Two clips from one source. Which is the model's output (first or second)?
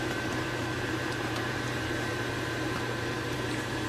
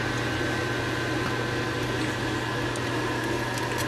first